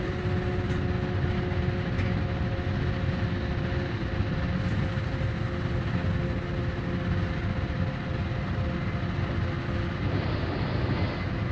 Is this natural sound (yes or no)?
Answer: yes